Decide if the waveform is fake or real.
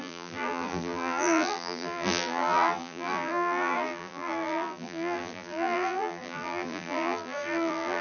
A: fake